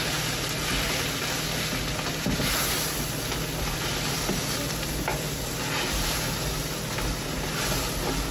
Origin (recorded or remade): recorded